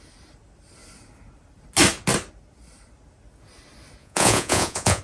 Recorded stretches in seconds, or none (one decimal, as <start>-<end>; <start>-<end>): 0.0-4.0